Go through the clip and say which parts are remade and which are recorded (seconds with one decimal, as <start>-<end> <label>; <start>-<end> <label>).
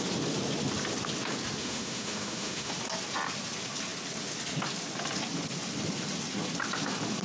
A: 0.0-1.6 recorded; 1.6-2.7 remade; 2.7-7.2 recorded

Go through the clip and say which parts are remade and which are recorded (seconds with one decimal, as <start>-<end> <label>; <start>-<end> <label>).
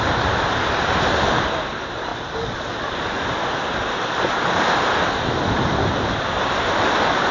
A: 0.0-2.1 remade; 2.1-4.7 recorded; 4.7-7.3 remade